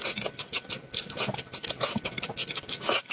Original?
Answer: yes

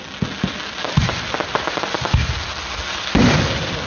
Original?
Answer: yes